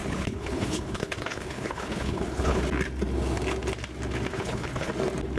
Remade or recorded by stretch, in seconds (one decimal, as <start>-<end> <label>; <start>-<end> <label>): 0.0-2.6 remade; 2.6-4.3 recorded; 4.3-4.9 remade; 4.9-5.4 recorded